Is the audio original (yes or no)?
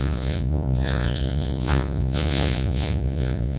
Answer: no